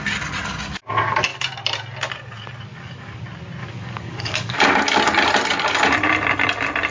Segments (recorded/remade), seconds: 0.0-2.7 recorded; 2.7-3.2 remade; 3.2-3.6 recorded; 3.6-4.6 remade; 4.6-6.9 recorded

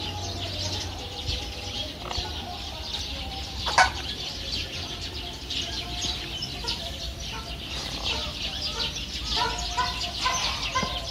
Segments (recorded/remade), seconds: 0.0-2.5 recorded; 2.5-7.2 remade; 7.2-7.8 recorded; 7.8-8.6 remade; 8.6-11.1 recorded